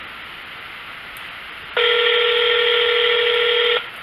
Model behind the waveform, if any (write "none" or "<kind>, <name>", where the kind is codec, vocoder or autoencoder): none